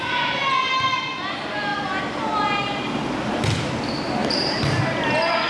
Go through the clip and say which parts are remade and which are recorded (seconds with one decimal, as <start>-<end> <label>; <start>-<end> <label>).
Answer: 0.0-4.2 recorded; 4.2-4.8 remade; 4.8-5.5 recorded

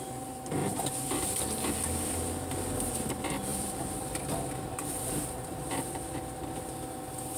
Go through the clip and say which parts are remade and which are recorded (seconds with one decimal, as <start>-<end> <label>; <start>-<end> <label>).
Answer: 0.0-0.6 recorded; 0.6-2.3 remade; 2.3-3.5 recorded; 3.5-6.6 remade; 6.6-7.4 recorded

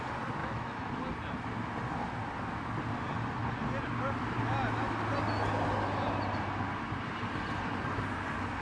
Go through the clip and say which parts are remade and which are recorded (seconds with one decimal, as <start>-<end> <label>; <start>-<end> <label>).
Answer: 0.0-0.4 recorded; 0.4-0.9 remade; 0.9-8.6 recorded

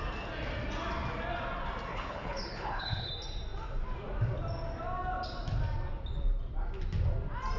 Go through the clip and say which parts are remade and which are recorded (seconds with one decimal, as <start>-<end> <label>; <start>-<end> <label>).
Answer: 0.0-1.9 recorded; 1.9-3.1 remade; 3.1-7.6 recorded